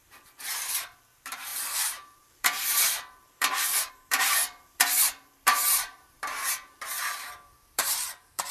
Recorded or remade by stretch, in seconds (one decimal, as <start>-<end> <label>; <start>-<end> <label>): 0.0-8.5 remade